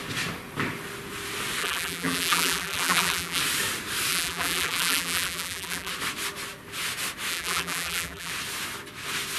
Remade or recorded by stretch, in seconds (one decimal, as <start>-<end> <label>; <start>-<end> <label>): 0.0-1.6 recorded; 1.6-3.4 remade; 3.4-4.1 recorded; 4.1-5.9 remade; 5.9-7.3 recorded; 7.3-8.3 remade; 8.3-9.4 recorded